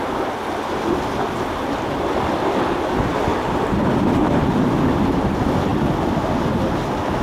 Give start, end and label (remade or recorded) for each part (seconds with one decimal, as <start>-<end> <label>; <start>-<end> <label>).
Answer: 0.0-7.2 recorded